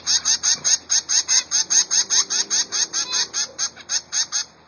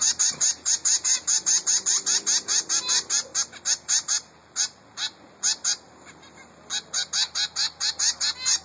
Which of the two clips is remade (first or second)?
first